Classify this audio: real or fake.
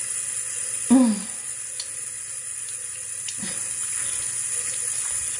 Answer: real